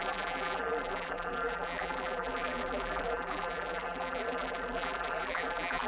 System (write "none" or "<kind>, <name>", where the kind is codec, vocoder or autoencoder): vocoder, BigVGAN v2